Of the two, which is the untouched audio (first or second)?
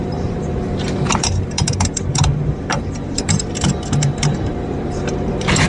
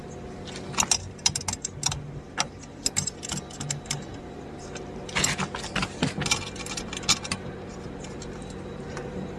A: second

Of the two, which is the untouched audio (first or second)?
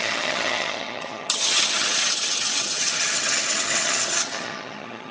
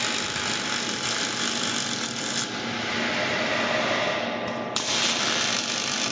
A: second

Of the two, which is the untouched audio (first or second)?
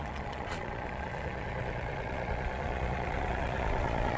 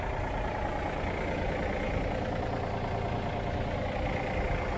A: second